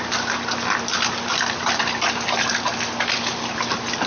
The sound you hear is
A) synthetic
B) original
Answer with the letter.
B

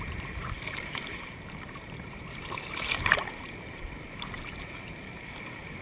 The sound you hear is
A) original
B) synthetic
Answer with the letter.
B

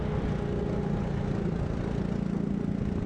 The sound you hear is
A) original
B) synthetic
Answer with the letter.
A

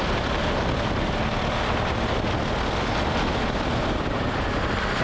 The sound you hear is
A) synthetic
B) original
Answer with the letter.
B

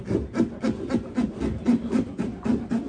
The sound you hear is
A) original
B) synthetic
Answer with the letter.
A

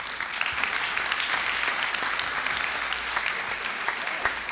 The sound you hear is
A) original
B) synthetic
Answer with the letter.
A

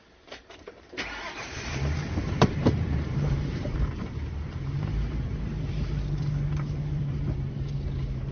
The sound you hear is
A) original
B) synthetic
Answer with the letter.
B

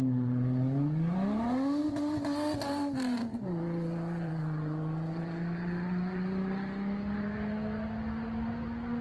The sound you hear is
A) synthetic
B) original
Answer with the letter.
B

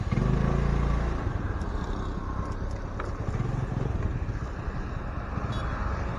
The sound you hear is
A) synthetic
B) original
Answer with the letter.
B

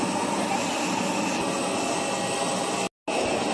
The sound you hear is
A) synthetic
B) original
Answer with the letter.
B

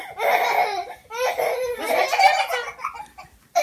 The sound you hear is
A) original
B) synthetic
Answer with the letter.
A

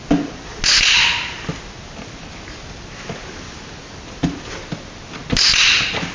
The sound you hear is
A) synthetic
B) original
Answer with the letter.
B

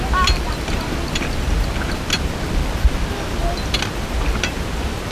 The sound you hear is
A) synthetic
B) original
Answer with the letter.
B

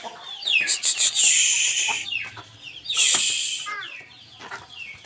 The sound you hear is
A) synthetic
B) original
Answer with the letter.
B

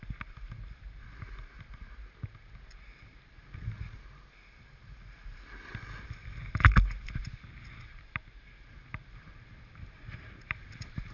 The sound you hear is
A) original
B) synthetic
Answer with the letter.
A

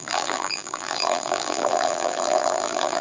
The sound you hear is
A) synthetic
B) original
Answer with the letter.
A